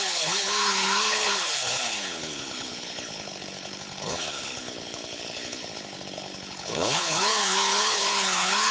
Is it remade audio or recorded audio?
remade